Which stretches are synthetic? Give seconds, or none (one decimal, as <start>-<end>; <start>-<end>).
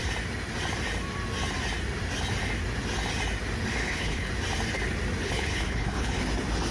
3.8-4.3; 5.2-6.2